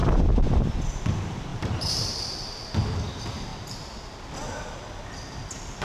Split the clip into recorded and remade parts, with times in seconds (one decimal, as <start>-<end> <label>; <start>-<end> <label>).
0.0-1.5 recorded; 1.5-2.1 remade; 2.1-3.5 recorded; 3.5-4.2 remade; 4.2-5.8 recorded